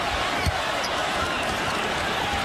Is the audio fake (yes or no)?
yes